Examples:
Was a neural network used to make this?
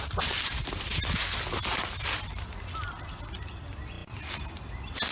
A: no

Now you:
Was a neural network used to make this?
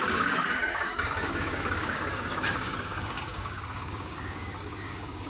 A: yes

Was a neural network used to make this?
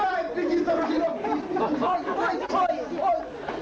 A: no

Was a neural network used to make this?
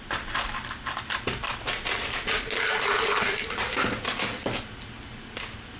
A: no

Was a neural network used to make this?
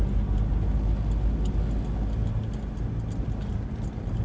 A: no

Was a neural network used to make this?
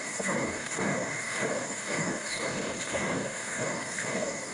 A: yes